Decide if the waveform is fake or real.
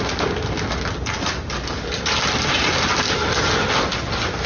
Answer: real